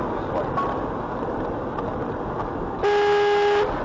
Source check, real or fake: real